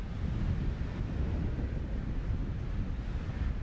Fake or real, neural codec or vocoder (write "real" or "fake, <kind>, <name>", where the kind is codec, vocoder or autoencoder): real